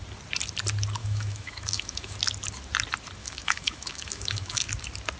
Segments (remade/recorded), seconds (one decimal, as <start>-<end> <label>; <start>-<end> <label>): 0.0-1.0 recorded; 1.0-2.2 remade; 2.2-3.2 recorded; 3.2-4.7 remade; 4.7-5.2 recorded